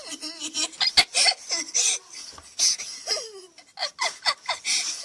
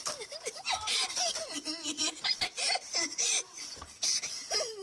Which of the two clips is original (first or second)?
first